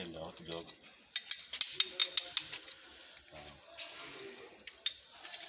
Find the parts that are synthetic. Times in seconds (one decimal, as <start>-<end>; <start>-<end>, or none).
none